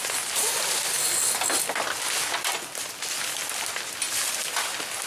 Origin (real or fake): real